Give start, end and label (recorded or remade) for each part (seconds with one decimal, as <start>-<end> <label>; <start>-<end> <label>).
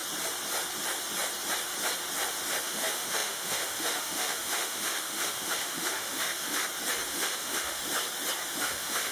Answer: 0.0-2.6 recorded; 2.6-6.6 remade; 6.6-7.1 recorded; 7.1-7.8 remade; 7.8-8.6 recorded; 8.6-9.1 remade